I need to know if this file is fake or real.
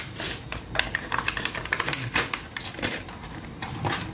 fake